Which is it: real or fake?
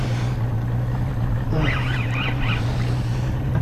real